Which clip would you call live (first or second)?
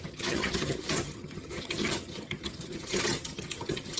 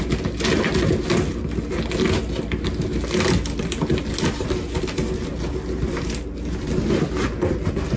second